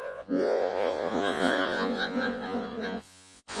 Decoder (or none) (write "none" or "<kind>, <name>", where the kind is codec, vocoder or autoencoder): vocoder, Vocos